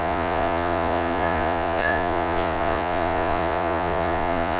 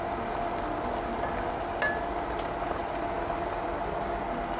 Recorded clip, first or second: second